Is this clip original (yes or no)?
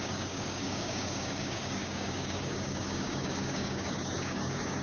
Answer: no